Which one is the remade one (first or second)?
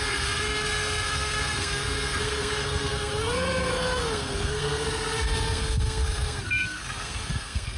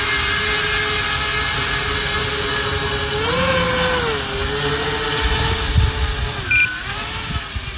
first